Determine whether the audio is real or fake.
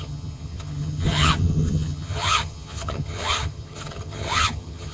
fake